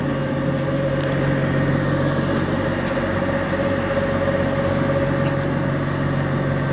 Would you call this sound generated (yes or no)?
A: no